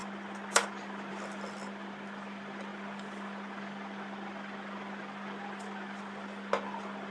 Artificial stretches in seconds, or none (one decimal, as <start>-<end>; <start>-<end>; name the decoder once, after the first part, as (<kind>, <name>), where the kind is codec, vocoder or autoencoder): none